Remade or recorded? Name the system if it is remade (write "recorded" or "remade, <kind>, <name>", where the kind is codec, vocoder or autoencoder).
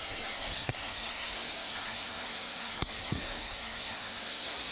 remade, codec, SNAC